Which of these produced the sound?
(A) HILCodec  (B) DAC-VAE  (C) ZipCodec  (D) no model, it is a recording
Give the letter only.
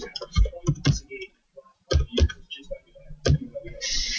D